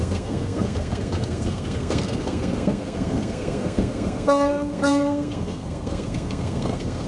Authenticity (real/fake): fake